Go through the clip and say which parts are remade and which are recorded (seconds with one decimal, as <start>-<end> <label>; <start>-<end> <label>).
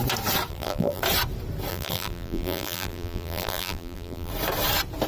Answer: 0.0-0.5 recorded; 0.5-1.0 remade; 1.0-1.7 recorded; 1.7-4.3 remade; 4.3-5.1 recorded